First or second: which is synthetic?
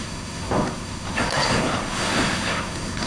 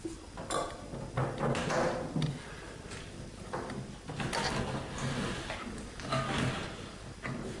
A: first